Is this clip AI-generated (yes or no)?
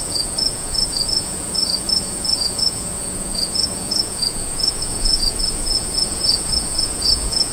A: yes